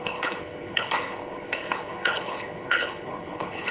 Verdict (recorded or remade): remade